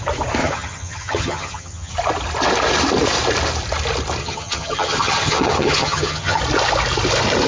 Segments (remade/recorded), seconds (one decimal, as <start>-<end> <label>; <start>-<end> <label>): 0.0-0.4 recorded; 0.4-1.9 remade; 1.9-4.2 recorded; 4.2-6.4 remade; 6.4-7.5 recorded